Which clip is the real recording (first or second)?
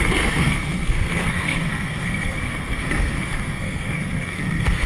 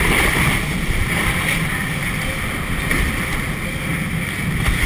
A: second